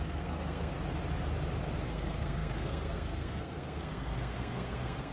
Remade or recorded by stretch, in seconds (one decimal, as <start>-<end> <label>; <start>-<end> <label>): 0.0-0.8 remade; 0.8-1.9 recorded; 1.9-5.1 remade